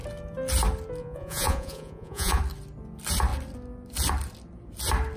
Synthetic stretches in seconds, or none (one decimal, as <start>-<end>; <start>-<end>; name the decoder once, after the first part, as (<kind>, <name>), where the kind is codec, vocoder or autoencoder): 1.0-2.4 (vocoder, Vocos)